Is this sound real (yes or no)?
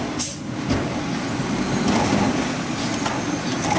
yes